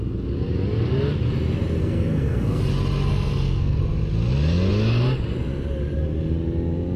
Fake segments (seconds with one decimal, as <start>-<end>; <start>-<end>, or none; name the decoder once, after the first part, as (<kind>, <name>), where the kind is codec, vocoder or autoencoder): 1.8-2.6 (codec, SNAC); 3.1-3.8